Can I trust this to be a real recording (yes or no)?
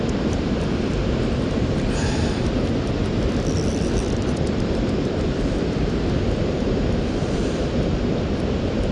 no